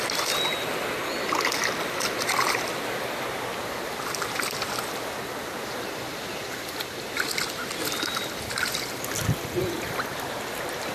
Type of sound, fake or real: real